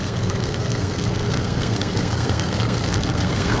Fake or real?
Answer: fake